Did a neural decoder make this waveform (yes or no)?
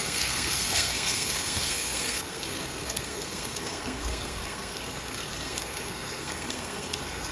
yes